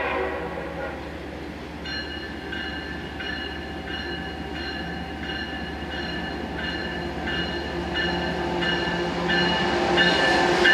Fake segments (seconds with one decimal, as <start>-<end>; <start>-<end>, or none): none